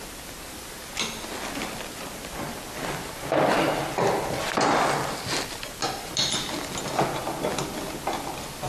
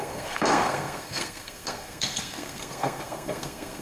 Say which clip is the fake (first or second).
second